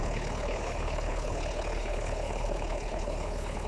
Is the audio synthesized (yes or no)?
yes